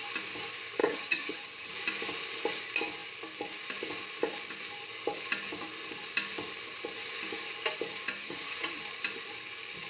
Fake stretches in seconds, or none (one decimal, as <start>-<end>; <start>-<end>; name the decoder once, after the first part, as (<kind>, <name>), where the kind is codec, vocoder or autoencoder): 0.8-1.7 (vocoder, HiFi-GAN); 8.2-8.8